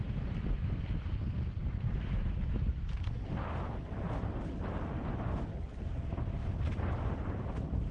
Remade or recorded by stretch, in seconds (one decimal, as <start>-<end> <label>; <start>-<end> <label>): 0.0-7.9 recorded